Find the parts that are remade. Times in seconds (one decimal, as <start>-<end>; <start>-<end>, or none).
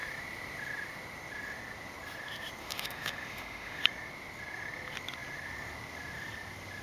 2.6-3.8